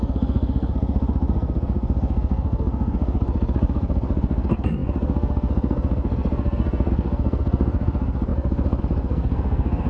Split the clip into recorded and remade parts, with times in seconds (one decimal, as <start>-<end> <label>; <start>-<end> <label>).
0.0-9.9 remade